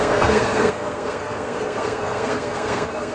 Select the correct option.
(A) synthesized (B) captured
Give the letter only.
A